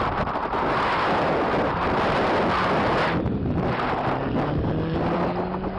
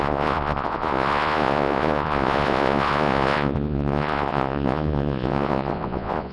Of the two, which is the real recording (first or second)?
first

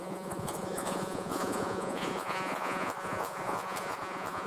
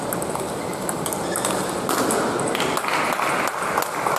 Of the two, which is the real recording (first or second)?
second